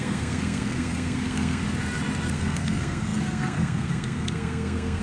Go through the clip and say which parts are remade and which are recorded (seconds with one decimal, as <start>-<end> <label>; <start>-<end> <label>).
0.0-1.6 remade; 1.6-2.3 recorded; 2.3-5.0 remade